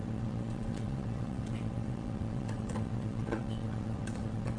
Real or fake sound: fake